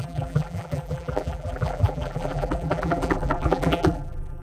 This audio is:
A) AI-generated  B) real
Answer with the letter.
A